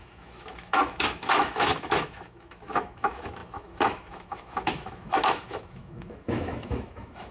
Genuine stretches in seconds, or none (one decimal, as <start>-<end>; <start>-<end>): none